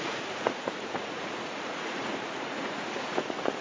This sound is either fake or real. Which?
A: fake